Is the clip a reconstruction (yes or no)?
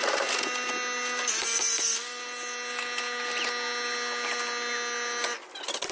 no